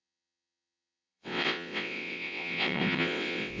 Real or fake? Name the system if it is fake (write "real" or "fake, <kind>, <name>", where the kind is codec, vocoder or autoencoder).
fake, vocoder, WaveNeXt